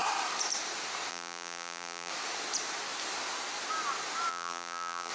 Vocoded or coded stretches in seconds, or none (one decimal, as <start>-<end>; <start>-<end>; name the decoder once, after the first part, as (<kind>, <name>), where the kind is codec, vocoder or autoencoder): 1.1-2.1 (vocoder, BigVGAN v2); 4.3-5.1